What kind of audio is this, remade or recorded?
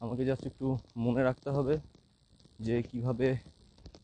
recorded